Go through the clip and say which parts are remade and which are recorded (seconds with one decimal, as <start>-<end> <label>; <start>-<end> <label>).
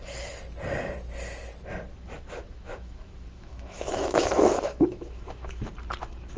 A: 0.0-1.9 recorded; 1.9-5.7 remade; 5.7-6.4 recorded